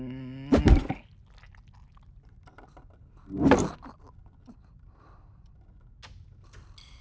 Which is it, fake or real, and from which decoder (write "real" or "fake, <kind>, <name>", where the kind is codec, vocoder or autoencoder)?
real